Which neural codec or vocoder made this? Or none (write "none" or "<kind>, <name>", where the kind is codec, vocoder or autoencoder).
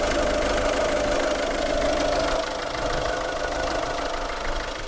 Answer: none